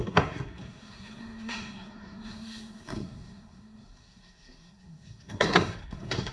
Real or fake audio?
fake